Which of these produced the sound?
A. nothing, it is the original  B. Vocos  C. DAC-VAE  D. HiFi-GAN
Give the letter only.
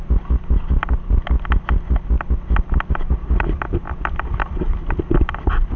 A